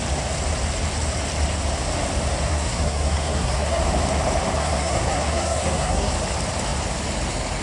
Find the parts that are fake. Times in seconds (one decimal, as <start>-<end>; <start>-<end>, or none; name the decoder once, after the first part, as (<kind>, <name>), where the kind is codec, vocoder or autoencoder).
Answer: 2.5-3.8 (codec, SNAC); 4.6-6.1